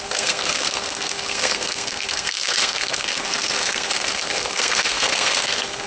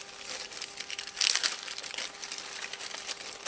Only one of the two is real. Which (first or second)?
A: second